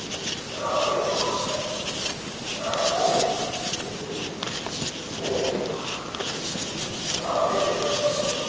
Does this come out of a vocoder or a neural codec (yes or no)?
no